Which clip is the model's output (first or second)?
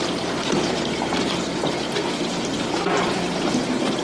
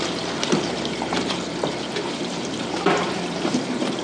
second